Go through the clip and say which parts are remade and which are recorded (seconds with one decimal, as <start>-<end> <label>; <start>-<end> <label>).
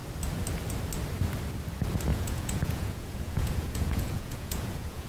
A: 0.0-2.1 recorded; 2.1-5.1 remade